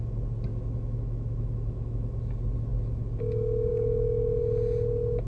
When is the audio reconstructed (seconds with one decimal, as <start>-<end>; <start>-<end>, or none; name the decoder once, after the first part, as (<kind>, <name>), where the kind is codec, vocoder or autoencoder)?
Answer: 0.5-2.2 (autoencoder, DAC-VAE); 3.7-4.4